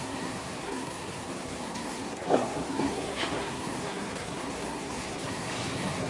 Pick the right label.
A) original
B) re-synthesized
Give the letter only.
B